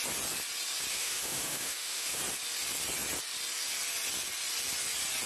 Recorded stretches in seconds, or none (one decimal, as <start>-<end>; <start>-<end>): 0.0-0.9; 2.2-5.3